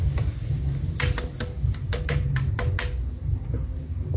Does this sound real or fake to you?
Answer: real